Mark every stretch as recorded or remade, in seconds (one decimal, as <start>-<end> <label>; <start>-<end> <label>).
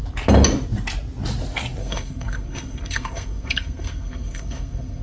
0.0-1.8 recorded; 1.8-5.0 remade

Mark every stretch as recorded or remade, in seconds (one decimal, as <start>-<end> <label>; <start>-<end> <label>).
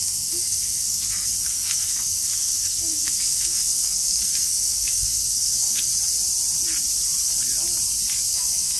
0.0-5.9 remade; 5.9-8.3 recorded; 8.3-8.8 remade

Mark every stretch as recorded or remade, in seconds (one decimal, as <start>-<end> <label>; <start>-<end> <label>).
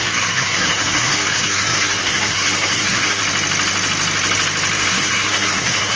0.0-3.2 remade; 3.2-4.9 recorded; 4.9-6.0 remade